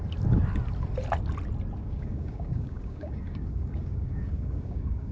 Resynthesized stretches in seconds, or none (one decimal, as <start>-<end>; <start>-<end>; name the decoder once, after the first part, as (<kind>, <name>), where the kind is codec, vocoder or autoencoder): 1.8-5.1 (codec, DAC)